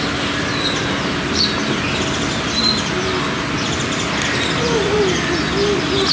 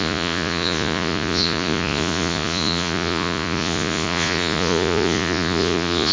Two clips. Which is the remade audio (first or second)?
second